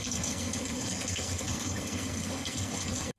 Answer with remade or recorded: remade